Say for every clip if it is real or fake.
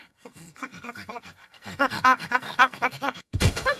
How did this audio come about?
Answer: fake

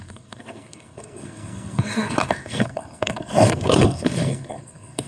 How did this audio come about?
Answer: fake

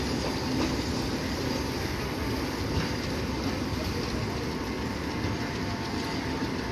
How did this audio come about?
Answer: real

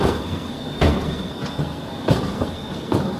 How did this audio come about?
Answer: fake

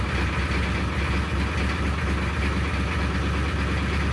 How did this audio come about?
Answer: real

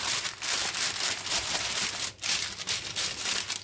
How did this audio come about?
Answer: real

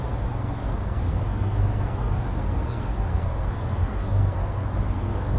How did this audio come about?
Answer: fake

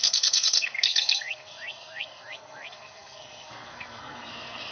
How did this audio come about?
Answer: fake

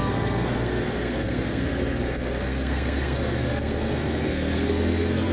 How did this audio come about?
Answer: fake